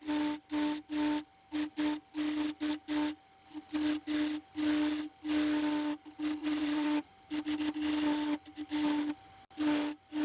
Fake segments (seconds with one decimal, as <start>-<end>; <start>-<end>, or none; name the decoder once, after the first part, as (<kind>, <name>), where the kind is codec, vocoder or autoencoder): 6.4-7.1 (vocoder, Vocos)